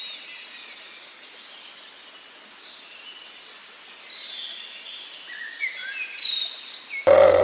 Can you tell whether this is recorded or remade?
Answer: recorded